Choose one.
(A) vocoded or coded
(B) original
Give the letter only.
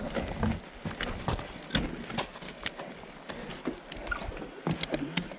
B